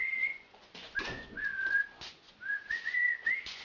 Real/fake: fake